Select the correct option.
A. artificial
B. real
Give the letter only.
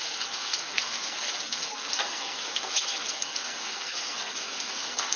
A